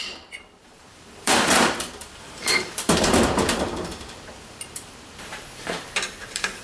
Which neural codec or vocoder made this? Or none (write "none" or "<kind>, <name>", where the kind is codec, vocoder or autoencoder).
vocoder, BigVGAN v2